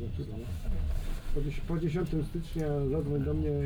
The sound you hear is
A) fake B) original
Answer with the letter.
B